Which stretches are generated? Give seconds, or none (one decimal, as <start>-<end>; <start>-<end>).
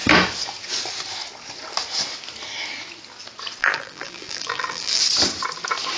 3.6-5.0